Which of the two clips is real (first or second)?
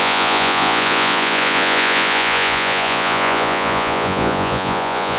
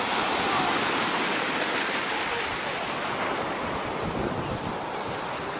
second